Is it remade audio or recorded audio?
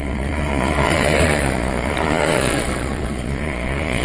remade